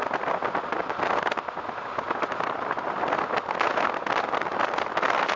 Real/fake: real